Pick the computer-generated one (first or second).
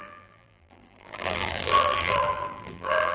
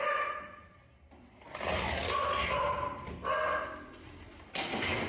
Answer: first